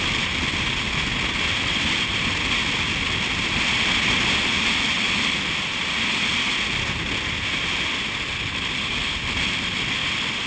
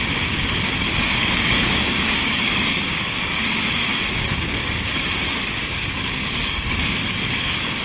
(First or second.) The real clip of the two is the first